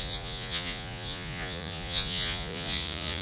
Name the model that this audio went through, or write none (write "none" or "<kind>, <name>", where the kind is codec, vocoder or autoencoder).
vocoder, Vocos